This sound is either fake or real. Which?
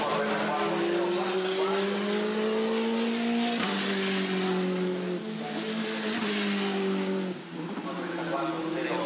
real